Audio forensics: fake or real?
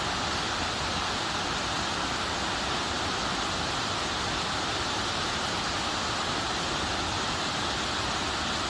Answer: real